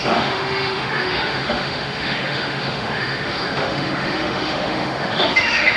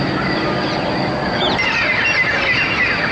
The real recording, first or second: second